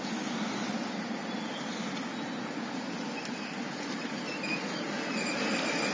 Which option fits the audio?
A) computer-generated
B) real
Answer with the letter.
B